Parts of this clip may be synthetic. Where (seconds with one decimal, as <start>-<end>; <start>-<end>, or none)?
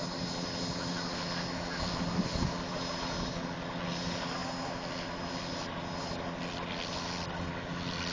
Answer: none